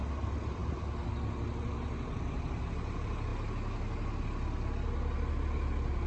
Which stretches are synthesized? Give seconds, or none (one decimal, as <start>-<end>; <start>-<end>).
none